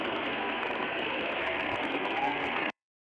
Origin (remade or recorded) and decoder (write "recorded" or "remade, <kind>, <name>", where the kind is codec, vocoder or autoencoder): remade, codec, SNAC